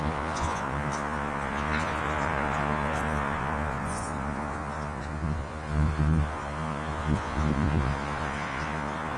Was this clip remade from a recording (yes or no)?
yes